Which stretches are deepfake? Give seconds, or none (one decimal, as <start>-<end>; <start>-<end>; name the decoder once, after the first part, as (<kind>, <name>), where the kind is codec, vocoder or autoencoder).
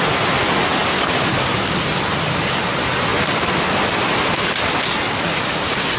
none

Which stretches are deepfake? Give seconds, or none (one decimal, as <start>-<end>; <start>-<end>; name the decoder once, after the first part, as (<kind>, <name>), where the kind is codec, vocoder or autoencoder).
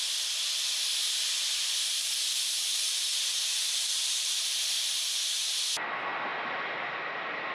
1.9-4.9 (vocoder, BigVGAN v2)